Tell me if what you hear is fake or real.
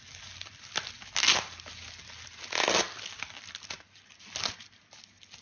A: real